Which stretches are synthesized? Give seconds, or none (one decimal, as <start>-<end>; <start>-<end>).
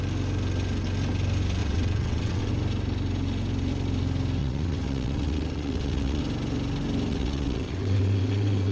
1.6-2.5; 4.4-6.2; 7.1-8.7